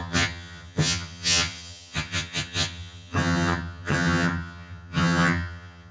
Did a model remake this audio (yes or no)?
yes